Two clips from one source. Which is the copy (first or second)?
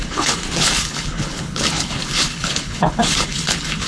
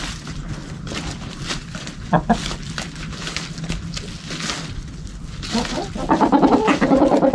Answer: first